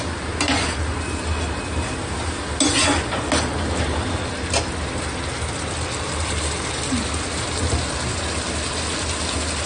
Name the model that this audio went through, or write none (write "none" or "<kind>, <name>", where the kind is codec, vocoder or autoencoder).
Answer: none